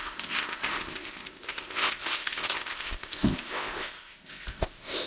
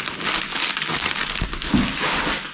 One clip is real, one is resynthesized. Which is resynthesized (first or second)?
first